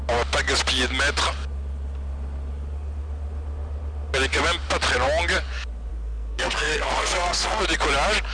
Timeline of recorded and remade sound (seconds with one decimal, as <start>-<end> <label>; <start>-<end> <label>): 0.0-5.9 recorded; 5.9-7.6 remade; 7.6-8.3 recorded